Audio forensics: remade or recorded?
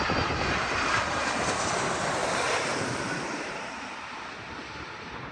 remade